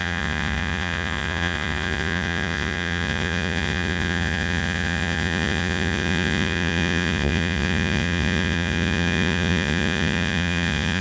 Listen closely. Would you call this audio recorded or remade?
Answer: remade